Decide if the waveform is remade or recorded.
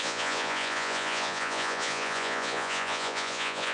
remade